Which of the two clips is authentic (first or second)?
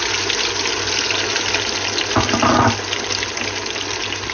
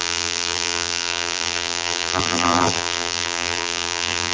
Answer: first